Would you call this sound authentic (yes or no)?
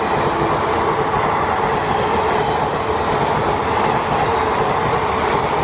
yes